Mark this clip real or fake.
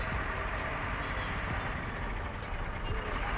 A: real